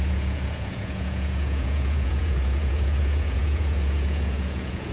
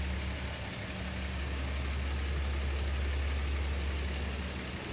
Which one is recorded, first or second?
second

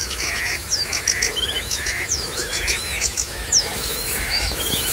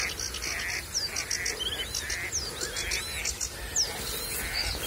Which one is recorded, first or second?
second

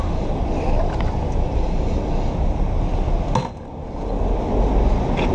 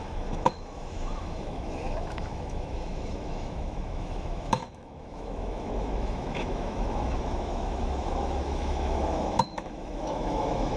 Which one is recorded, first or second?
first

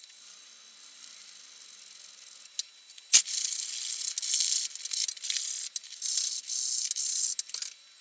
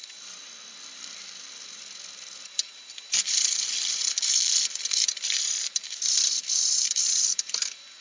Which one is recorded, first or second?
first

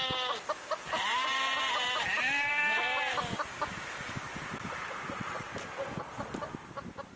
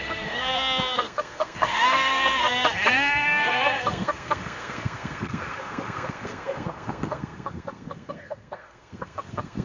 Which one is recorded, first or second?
first